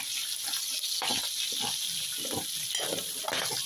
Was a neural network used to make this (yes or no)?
no